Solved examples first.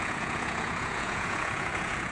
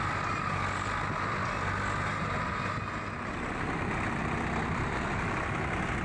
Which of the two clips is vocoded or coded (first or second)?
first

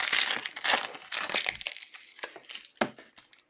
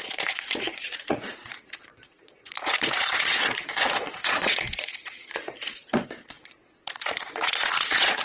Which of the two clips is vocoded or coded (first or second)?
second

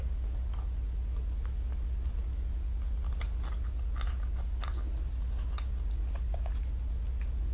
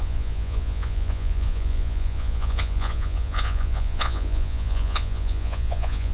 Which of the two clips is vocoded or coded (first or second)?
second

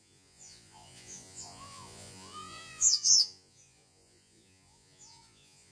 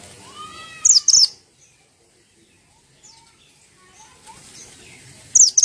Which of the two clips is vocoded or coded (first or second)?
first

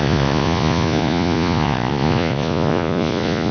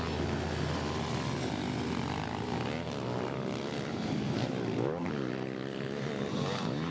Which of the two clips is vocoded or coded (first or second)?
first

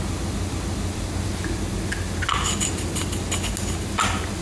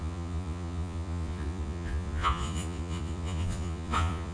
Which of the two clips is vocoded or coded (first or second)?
second